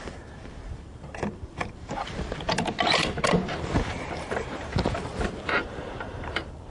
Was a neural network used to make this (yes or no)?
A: yes